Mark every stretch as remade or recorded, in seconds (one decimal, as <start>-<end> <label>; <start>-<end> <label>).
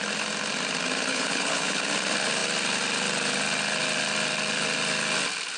0.0-1.1 recorded; 1.1-1.8 remade; 1.8-5.6 recorded